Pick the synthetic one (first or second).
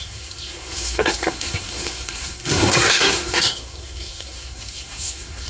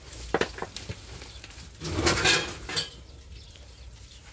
first